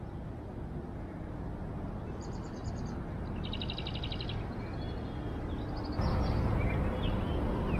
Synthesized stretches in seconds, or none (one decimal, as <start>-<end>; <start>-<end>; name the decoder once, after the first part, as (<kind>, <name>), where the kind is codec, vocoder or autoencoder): none